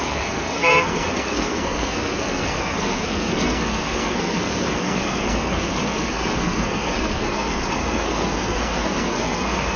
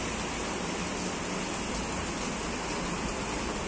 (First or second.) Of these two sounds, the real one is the second